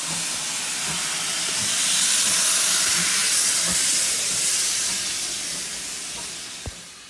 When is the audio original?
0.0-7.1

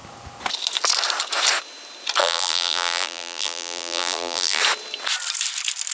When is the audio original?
0.0-2.2; 4.6-5.9